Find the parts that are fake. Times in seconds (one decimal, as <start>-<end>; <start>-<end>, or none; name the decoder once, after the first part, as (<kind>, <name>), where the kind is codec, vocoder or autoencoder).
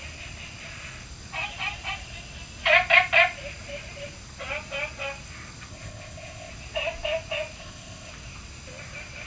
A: 5.7-6.5 (codec, ZipCodec); 7.6-8.1